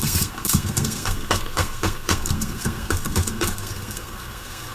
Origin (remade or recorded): remade